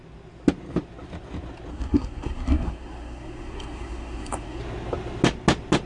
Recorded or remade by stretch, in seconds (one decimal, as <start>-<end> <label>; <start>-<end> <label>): 0.0-1.7 recorded; 1.7-4.6 remade; 4.6-5.9 recorded